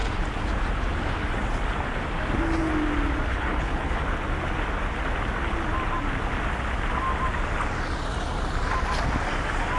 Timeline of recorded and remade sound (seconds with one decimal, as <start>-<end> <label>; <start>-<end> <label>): 0.0-3.3 recorded; 3.3-4.0 remade; 4.0-9.8 recorded